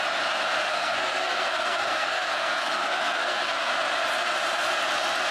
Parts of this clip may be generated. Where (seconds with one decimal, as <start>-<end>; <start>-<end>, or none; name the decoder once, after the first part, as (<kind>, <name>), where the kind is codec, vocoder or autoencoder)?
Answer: 0.7-3.7 (codec, SNAC)